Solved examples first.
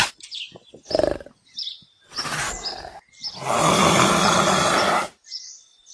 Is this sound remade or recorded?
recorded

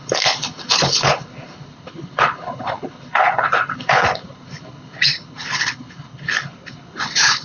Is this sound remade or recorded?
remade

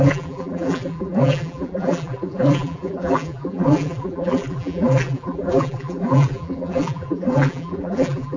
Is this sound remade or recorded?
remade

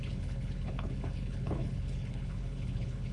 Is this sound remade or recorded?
remade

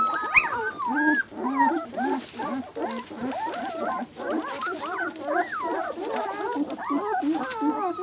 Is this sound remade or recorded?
recorded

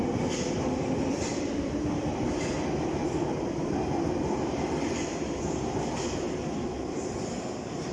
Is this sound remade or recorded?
recorded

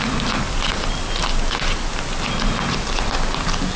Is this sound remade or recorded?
recorded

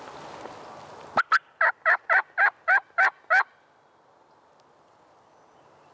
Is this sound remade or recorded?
recorded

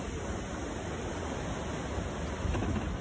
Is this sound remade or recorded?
recorded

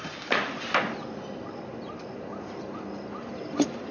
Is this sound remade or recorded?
recorded